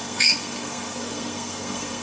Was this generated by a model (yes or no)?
yes